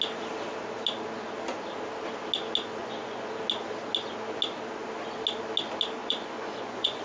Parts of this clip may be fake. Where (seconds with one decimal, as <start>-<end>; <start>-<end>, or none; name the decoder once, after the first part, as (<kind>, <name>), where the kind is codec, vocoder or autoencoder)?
2.8-3.3 (vocoder, Vocos); 6.0-7.0